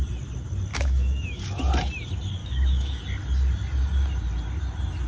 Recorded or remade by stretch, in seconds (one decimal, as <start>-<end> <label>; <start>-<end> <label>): 0.0-0.7 recorded; 0.7-1.4 remade; 1.4-2.4 recorded; 2.4-3.0 remade; 3.0-5.1 recorded